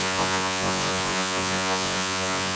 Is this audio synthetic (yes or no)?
yes